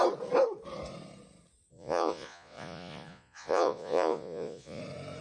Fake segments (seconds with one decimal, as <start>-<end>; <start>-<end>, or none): 1.7-4.8